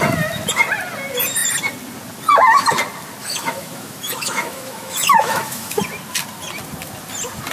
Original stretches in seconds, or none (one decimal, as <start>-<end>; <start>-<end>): 0.0-3.2; 5.8-7.5